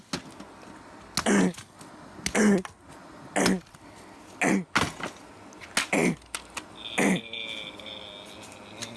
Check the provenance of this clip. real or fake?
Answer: real